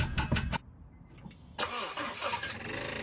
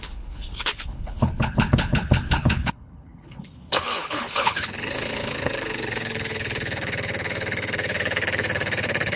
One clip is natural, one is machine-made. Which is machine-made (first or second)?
second